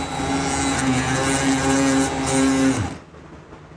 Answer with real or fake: real